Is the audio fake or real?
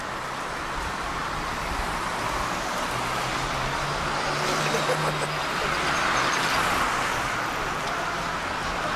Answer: real